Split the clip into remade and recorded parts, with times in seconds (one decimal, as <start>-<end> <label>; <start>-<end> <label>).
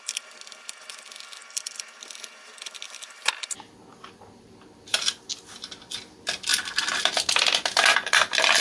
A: 0.0-1.4 recorded; 1.4-3.3 remade; 3.3-8.6 recorded